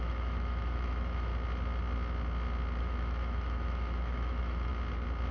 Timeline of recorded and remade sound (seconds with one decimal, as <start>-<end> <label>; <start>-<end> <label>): 0.0-1.3 remade; 1.3-2.8 recorded; 2.8-4.7 remade; 4.7-5.3 recorded